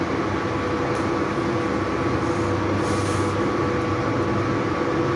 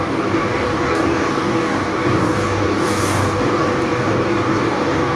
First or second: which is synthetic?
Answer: second